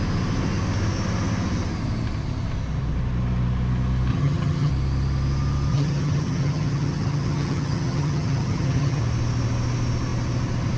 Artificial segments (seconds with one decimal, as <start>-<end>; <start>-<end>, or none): 4.1-4.7; 5.7-9.0